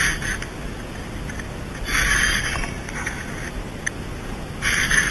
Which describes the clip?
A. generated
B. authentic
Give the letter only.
B